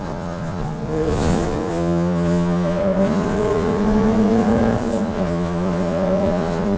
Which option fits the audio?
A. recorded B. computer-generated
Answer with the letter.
B